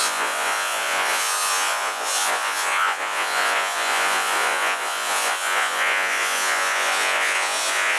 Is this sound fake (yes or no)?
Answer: yes